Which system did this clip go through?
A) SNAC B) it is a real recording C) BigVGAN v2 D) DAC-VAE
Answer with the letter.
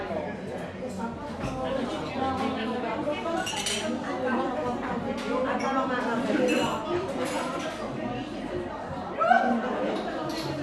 B